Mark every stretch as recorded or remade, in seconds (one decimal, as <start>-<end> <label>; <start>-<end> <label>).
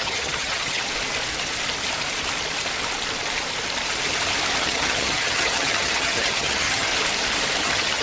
0.0-0.9 remade; 0.9-4.6 recorded; 4.6-6.9 remade; 6.9-7.6 recorded; 7.6-8.0 remade